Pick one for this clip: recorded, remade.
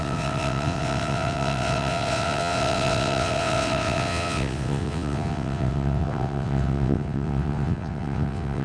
remade